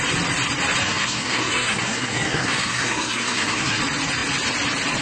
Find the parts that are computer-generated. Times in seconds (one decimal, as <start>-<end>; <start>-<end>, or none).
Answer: 0.8-3.8